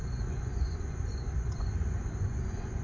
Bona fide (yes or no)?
no